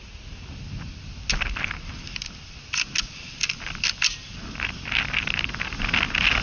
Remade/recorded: recorded